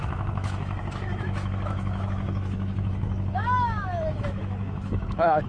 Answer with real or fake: fake